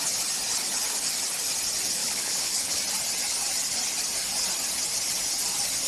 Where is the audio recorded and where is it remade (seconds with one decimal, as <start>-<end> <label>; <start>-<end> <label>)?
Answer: 0.0-2.0 recorded; 2.0-2.8 remade; 2.8-5.9 recorded